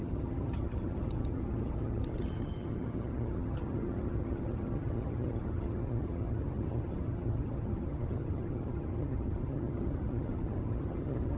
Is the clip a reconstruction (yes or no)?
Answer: yes